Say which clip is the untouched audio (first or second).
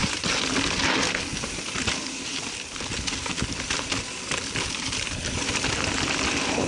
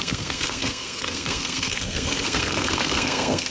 first